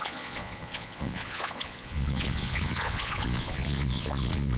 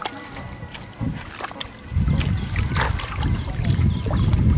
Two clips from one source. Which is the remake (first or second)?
first